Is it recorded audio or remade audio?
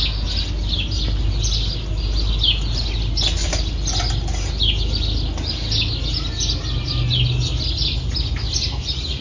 recorded